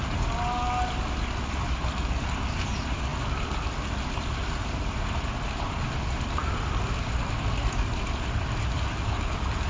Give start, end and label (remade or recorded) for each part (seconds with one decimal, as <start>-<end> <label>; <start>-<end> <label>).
0.0-9.7 recorded